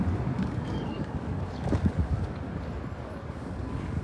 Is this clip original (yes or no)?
no